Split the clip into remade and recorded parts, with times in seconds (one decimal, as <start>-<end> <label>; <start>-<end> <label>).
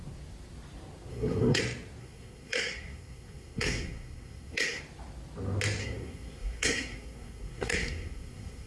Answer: 0.0-1.1 recorded; 1.1-1.6 remade; 1.6-2.0 recorded; 2.0-4.8 remade; 4.8-5.8 recorded; 5.8-8.7 remade